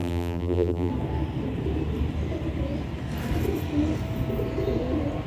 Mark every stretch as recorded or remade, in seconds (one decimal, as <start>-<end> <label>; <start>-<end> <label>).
0.0-0.9 remade; 0.9-5.3 recorded